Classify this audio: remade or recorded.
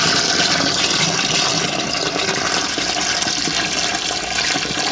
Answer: recorded